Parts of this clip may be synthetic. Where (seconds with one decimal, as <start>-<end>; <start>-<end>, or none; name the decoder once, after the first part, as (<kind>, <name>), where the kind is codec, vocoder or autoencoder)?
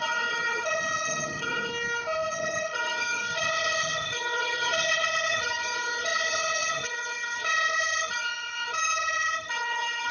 0.0-1.7 (vocoder, HiFi-GAN); 2.3-10.1